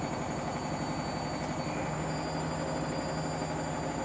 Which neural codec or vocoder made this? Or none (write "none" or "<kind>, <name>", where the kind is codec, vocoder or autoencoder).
none